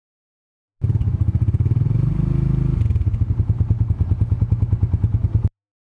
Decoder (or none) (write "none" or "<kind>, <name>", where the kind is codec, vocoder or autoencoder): none